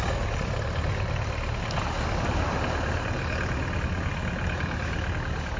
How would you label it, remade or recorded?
recorded